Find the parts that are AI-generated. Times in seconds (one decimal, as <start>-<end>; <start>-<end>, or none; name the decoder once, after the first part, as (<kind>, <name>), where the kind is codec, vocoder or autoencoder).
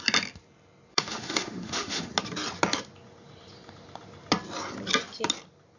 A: 0.9-2.1 (autoencoder, DAC-VAE)